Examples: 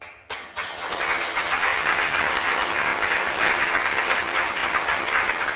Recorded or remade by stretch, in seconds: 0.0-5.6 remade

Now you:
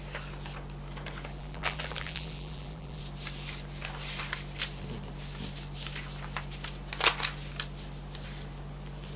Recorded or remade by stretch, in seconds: 0.0-1.3 recorded; 1.3-3.0 remade; 3.0-9.2 recorded